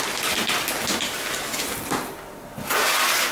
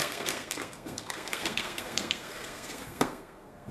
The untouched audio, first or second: first